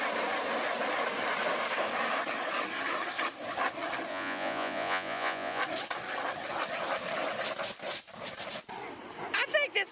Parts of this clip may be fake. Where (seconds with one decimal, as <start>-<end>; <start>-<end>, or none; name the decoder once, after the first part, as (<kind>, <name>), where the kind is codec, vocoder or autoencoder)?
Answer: 4.1-5.6 (vocoder, Vocos)